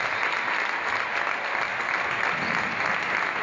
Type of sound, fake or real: real